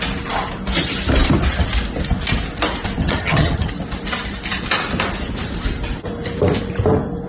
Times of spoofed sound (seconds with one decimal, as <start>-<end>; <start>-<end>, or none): 3.0-3.7